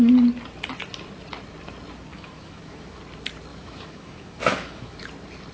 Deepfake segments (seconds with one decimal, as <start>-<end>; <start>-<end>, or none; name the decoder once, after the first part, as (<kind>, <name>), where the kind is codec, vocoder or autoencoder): 2.1-3.0 (autoencoder, DAC-VAE); 3.5-5.0